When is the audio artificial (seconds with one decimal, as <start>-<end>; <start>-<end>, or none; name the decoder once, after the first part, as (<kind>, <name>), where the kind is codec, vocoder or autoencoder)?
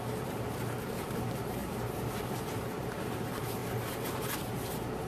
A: 0.0-3.6 (vocoder, BigVGAN v2); 4.5-5.1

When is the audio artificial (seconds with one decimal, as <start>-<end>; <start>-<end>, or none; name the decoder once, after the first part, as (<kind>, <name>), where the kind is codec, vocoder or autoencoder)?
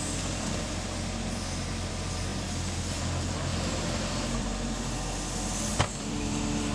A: 0.0-3.5 (vocoder, BigVGAN v2); 4.0-4.5; 5.7-6.7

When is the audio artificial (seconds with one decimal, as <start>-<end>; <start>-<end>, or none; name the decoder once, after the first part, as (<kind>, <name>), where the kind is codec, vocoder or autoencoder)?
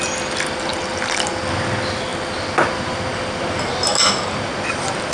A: 0.7-1.5 (vocoder, BigVGAN v2)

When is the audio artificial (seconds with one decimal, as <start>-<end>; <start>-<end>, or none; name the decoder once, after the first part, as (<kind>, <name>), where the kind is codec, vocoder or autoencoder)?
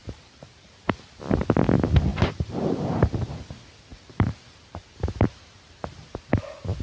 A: 0.0-1.4 (vocoder, BigVGAN v2); 2.1-2.7; 3.9-4.4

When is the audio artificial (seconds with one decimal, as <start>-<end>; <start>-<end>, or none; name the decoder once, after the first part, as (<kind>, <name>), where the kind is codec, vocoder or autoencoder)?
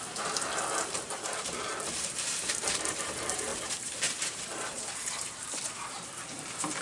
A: 0.0-6.8 (vocoder, BigVGAN v2)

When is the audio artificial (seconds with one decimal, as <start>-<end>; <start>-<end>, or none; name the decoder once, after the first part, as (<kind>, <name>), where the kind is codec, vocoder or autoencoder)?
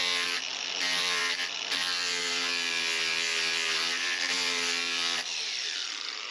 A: 0.5-1.2 (vocoder, BigVGAN v2); 2.2-6.3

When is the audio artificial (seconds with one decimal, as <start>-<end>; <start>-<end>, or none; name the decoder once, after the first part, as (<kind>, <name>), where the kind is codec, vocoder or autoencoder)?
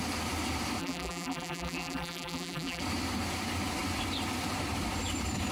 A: 0.8-2.8 (vocoder, BigVGAN v2)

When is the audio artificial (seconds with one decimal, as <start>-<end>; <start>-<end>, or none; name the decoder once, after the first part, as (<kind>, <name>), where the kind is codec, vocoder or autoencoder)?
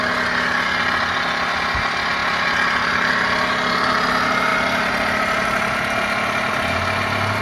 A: none